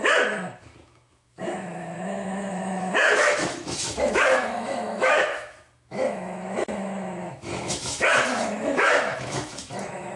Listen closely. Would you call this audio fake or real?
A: fake